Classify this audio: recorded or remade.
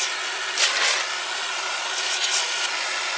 recorded